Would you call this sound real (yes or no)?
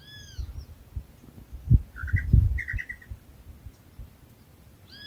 yes